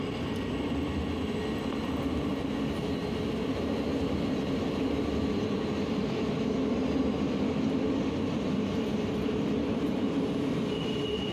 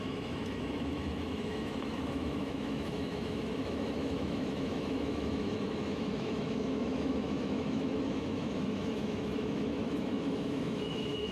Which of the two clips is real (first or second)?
first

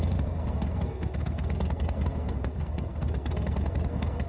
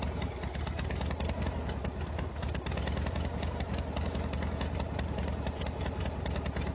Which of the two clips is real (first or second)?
second